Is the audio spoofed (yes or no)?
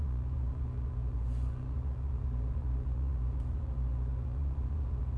yes